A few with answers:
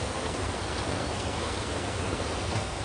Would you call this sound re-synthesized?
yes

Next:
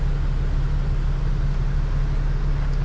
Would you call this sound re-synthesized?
no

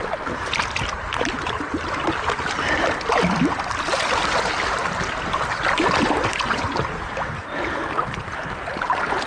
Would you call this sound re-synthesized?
no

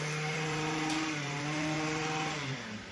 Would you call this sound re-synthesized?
yes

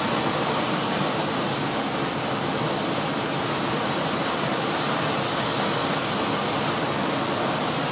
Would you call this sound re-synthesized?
no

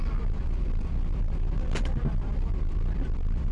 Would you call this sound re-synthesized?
no